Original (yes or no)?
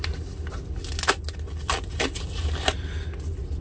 yes